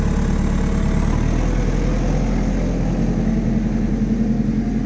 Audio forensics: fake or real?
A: real